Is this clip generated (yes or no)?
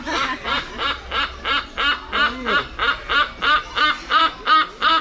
no